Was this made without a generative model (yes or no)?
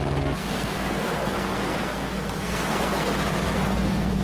no